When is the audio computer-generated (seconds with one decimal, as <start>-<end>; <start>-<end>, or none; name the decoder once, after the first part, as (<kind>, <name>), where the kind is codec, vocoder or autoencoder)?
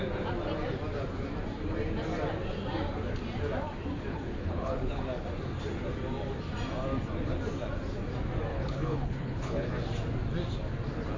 4.1-5.0 (codec, HILCodec); 8.5-9.7